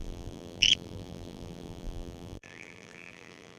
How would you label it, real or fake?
fake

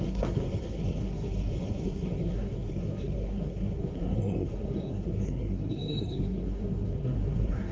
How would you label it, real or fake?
fake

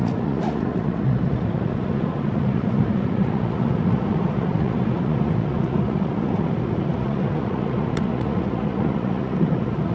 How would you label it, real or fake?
fake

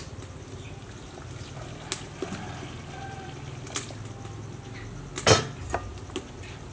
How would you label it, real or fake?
real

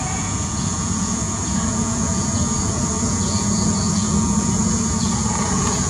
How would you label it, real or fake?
fake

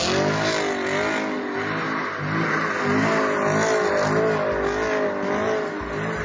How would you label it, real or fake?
real